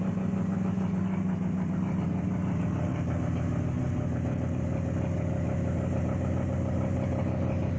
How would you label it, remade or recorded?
recorded